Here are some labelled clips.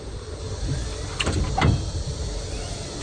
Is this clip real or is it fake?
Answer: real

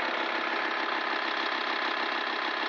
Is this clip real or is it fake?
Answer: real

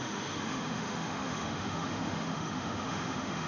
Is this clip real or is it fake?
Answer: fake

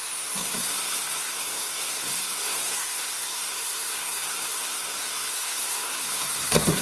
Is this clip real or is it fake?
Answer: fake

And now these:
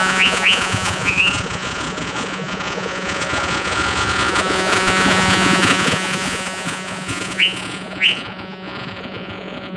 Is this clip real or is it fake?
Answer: fake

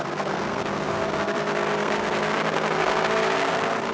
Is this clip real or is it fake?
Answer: fake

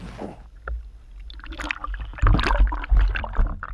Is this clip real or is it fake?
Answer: real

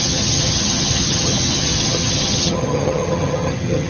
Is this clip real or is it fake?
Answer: fake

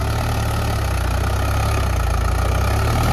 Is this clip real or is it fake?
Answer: real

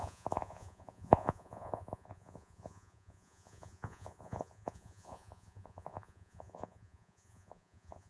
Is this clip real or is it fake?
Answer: fake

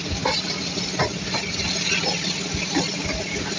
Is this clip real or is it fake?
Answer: real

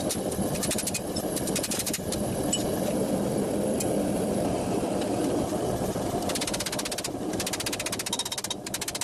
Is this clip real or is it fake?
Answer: real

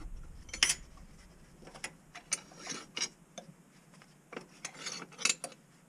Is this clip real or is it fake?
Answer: real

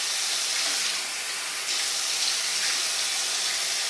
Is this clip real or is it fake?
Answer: real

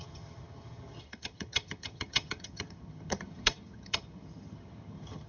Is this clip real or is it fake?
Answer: fake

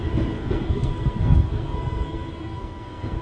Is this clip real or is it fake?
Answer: fake